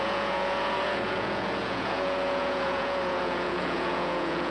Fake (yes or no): yes